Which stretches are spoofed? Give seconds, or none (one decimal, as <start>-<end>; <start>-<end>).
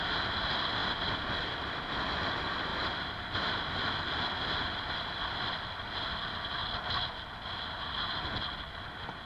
2.7-3.8